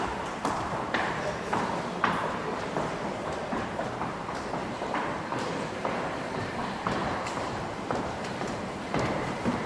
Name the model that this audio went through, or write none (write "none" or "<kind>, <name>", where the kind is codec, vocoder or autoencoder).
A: vocoder, BigVGAN v2